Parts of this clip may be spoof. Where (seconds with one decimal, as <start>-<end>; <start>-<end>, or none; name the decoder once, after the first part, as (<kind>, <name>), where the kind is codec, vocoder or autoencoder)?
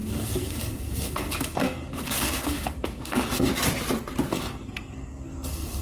0.0-3.5 (codec, SNAC); 4.3-5.8